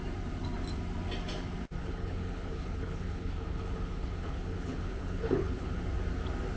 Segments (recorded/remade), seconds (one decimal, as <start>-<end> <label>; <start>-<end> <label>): 0.0-1.8 recorded; 1.8-5.8 remade; 5.8-6.6 recorded